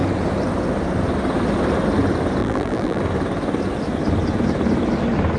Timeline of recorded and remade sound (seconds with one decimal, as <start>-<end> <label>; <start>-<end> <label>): 0.0-2.4 recorded; 2.4-3.0 remade; 3.0-5.4 recorded